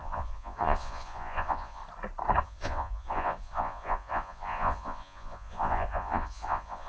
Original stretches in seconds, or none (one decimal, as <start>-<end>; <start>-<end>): 1.8-2.4